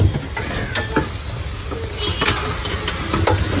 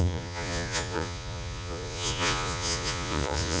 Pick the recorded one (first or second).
first